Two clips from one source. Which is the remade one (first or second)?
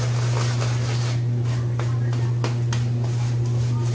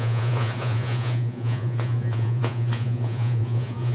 second